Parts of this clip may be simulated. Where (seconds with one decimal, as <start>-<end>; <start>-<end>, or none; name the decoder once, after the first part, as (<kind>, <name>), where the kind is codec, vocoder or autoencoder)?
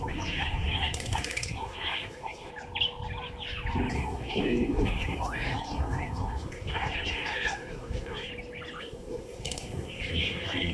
0.0-2.5 (codec, SNAC); 3.9-8.3; 8.8-10.7